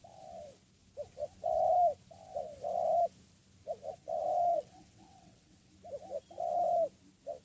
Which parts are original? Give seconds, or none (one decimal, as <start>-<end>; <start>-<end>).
0.0-4.5; 5.7-7.4